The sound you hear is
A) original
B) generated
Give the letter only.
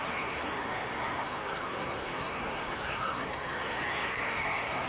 B